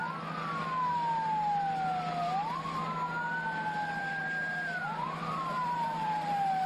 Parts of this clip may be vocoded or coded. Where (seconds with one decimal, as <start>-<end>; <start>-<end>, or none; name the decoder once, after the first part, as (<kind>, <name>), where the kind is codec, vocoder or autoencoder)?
4.0-6.7 (vocoder, BigVGAN v2)